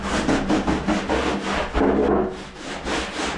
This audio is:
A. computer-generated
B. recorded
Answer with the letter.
B